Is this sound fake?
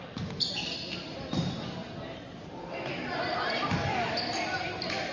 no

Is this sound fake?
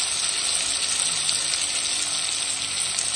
no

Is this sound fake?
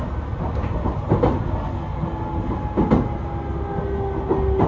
no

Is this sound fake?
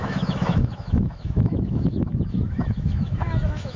yes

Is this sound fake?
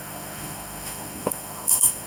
yes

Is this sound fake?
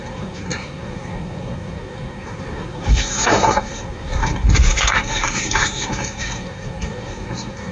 yes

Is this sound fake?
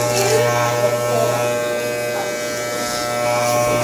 no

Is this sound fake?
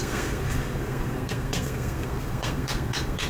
yes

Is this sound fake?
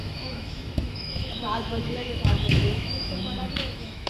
yes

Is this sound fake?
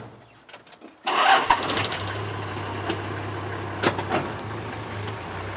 no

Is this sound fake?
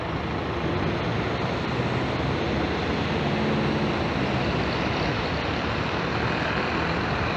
no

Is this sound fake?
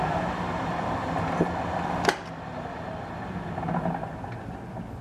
no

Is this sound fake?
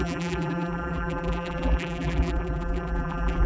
yes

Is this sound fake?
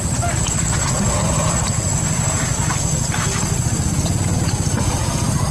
no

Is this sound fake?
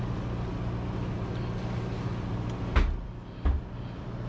no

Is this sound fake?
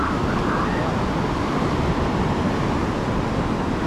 no